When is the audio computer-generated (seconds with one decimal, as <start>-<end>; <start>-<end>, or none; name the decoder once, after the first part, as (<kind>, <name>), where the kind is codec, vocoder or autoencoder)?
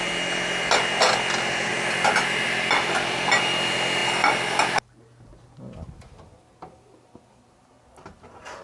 none